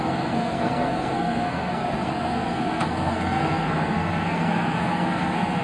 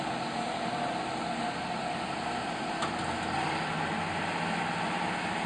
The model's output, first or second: first